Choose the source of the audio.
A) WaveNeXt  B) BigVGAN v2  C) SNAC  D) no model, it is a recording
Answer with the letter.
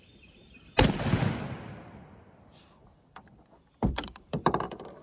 B